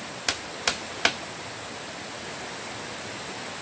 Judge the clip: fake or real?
real